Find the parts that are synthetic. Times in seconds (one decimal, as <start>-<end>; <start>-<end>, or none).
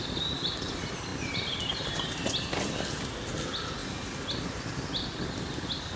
none